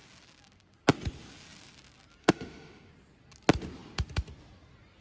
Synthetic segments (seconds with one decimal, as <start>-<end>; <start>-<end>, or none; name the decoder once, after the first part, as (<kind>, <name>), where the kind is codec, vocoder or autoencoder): 2.2-2.9 (autoencoder, DAC-VAE)